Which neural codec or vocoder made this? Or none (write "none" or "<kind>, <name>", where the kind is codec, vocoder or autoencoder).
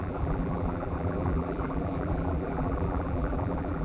vocoder, BigVGAN v2